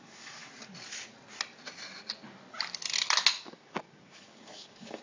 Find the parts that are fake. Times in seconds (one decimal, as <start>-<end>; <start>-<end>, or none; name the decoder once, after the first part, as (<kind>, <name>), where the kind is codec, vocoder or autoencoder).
0.0-0.4 (codec, DAC); 3.4-5.0